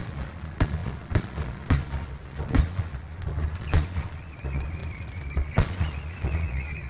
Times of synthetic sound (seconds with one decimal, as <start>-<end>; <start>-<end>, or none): 0.0-6.9

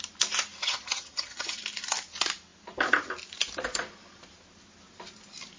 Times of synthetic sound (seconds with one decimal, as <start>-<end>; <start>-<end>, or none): 0.6-1.6

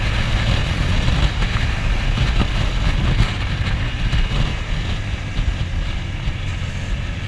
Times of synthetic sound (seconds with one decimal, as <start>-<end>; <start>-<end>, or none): 0.6-1.1

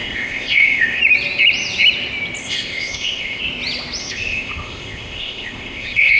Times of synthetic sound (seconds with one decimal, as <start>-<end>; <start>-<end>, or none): 0.0-1.0; 2.4-3.4; 4.0-6.2